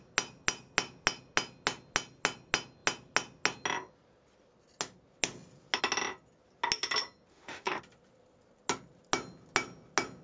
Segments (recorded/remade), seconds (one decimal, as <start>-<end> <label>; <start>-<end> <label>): 0.0-7.3 recorded; 7.3-7.8 remade; 7.8-10.2 recorded